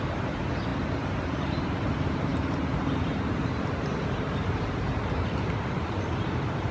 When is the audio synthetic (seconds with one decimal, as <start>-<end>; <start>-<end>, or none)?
0.0-0.7; 1.3-6.7